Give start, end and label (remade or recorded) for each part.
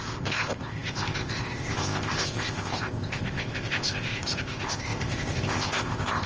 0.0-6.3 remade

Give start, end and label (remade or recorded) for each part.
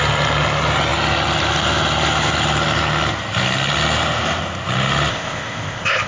0.0-5.1 recorded; 5.1-6.1 remade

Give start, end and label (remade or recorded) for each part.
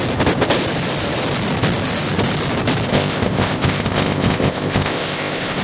0.0-2.9 recorded; 2.9-5.6 remade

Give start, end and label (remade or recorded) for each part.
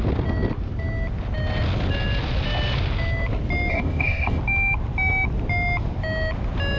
0.0-3.7 recorded; 3.7-4.4 remade; 4.4-6.8 recorded